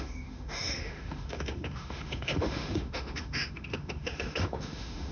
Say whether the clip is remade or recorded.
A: remade